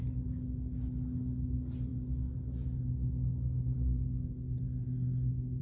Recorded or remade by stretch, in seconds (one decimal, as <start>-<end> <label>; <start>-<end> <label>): 0.0-5.6 recorded